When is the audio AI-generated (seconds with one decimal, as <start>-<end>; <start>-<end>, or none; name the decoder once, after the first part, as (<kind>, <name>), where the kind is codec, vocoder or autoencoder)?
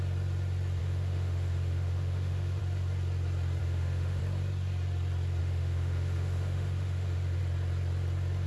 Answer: 0.8-2.6 (autoencoder, DAC-VAE); 3.6-4.2; 5.4-7.4